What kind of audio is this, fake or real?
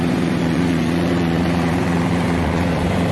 fake